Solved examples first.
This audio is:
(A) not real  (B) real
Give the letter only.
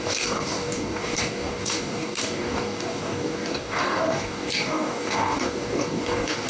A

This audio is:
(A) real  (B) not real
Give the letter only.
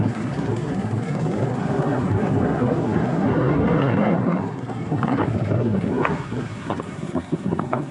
B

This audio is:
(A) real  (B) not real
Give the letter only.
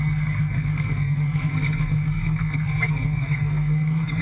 B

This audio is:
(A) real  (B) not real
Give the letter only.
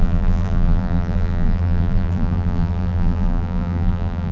B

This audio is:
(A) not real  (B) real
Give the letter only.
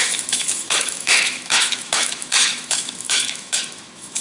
A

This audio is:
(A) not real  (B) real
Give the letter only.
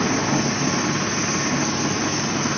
B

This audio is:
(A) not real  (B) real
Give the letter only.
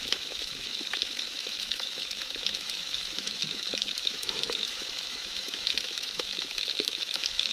A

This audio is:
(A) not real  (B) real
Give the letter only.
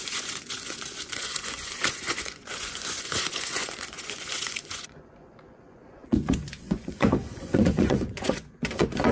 A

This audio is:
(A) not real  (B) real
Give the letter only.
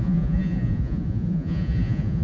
A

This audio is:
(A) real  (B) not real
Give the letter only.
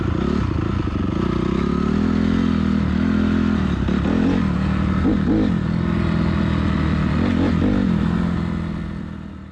A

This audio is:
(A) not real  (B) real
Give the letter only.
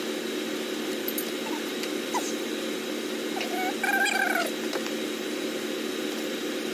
B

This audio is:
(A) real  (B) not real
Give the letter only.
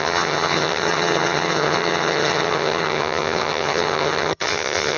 B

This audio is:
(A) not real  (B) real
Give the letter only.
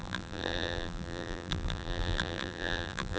A